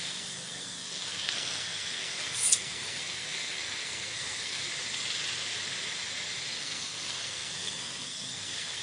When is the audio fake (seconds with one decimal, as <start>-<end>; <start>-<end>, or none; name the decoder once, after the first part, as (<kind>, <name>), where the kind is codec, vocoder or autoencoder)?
0.0-4.7 (codec, SNAC); 6.6-8.8